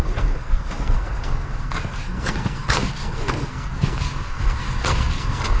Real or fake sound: fake